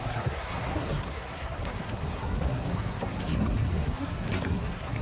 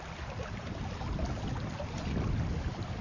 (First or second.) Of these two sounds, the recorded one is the second